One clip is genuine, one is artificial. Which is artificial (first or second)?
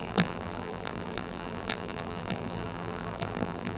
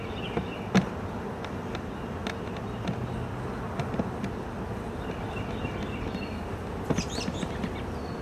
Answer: first